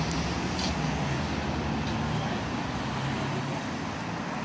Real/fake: real